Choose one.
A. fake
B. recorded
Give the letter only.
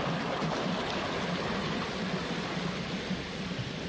B